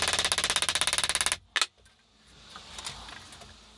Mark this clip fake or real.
real